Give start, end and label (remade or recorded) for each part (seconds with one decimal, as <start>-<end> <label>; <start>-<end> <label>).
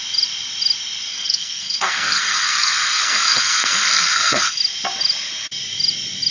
0.0-1.1 recorded; 1.1-4.6 remade; 4.6-6.3 recorded